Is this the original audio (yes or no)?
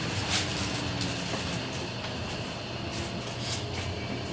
yes